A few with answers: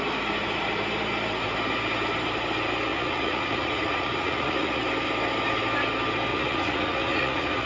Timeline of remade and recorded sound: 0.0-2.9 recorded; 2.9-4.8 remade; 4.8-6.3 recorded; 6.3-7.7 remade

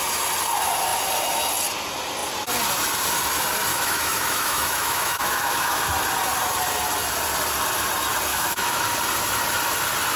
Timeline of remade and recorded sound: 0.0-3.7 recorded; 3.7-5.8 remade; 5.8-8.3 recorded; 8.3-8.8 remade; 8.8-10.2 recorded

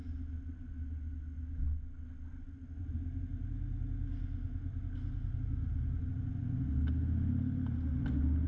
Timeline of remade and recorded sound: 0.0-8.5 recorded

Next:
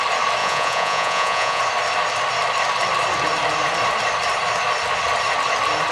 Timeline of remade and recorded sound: 0.0-0.4 recorded; 0.4-1.6 remade; 1.6-5.9 recorded

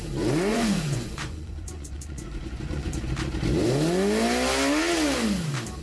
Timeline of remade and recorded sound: 0.0-0.5 recorded; 0.5-3.1 remade; 3.1-5.8 recorded

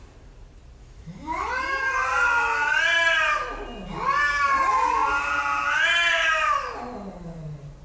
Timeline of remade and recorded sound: 0.0-0.8 recorded; 0.8-1.5 remade; 1.5-7.8 recorded